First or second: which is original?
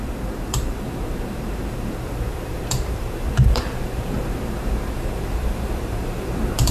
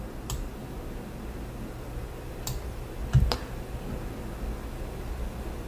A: second